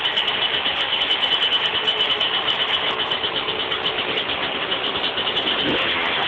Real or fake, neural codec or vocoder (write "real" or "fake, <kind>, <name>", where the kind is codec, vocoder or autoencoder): real